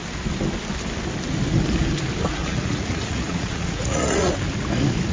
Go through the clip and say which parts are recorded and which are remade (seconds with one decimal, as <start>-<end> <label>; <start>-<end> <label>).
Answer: 0.0-2.4 recorded; 2.4-4.3 remade; 4.3-5.1 recorded